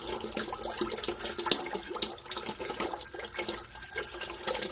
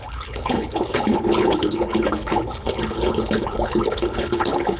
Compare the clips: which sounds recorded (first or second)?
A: first